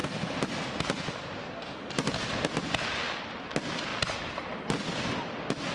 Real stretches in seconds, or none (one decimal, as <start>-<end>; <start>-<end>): 0.0-5.7